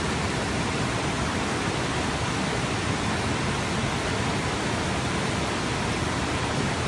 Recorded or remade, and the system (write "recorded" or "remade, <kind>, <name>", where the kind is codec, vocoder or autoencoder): recorded